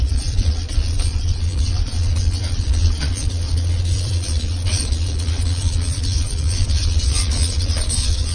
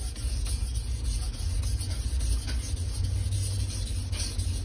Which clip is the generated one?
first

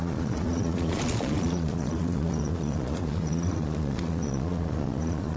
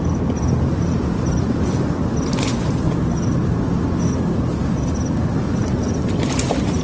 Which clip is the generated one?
first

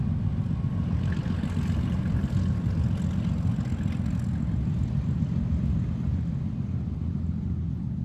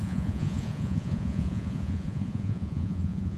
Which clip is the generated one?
second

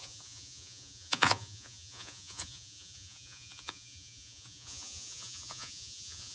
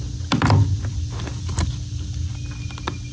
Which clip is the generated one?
first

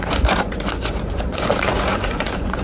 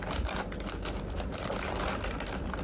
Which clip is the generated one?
first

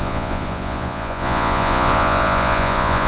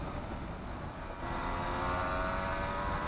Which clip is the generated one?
first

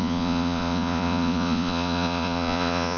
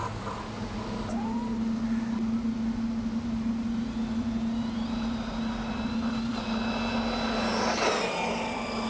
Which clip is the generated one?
first